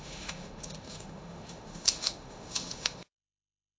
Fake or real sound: fake